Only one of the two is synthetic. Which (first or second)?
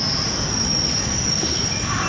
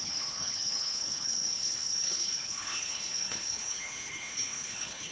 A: second